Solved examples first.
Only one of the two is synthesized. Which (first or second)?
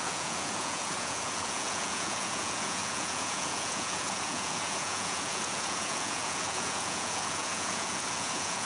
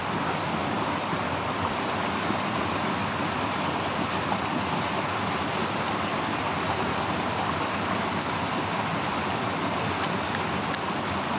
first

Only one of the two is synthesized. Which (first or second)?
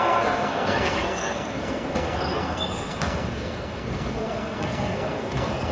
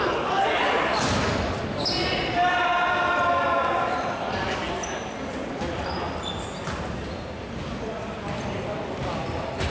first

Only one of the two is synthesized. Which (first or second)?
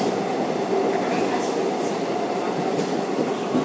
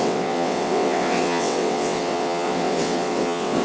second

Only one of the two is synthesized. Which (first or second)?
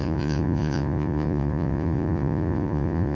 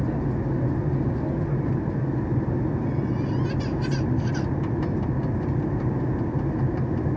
first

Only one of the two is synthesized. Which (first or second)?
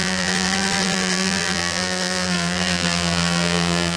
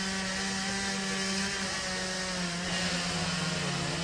first